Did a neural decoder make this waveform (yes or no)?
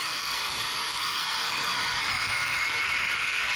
yes